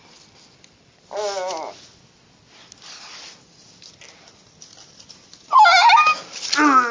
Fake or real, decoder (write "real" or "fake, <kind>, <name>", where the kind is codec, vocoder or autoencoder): real